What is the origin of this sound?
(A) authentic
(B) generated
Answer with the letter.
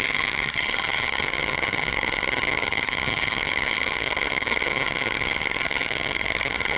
B